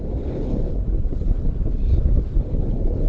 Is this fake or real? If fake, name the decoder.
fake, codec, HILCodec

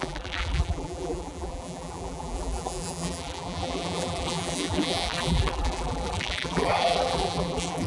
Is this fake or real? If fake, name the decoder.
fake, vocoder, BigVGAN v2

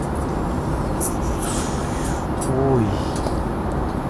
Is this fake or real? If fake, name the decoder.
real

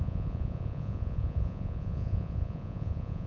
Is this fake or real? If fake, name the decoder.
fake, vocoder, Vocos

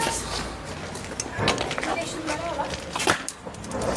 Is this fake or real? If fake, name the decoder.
real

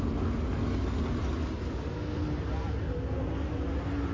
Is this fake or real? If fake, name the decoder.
real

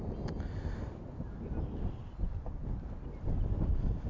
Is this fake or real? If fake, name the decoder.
real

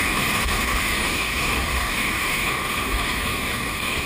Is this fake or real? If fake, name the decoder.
fake, codec, DAC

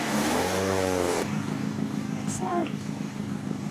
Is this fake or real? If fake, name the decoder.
fake, codec, DAC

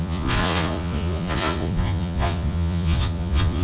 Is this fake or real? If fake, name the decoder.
fake, vocoder, Vocos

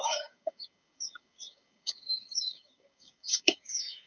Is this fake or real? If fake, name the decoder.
fake, codec, DAC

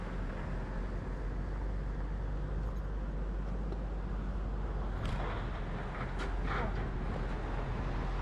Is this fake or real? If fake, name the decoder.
real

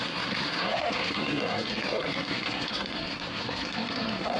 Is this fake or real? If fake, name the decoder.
fake, codec, SNAC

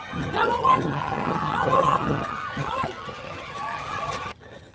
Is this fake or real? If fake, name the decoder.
fake, vocoder, HiFi-GAN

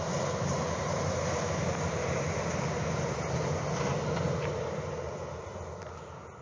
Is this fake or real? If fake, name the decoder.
real